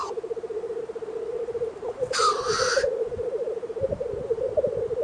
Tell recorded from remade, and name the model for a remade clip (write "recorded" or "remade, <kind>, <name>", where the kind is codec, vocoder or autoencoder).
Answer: remade, vocoder, BigVGAN v2